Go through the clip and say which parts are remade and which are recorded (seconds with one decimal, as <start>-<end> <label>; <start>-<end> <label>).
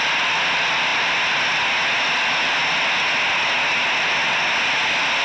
0.0-5.2 recorded